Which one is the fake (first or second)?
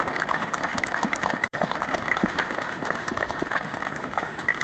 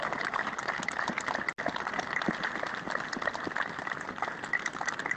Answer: first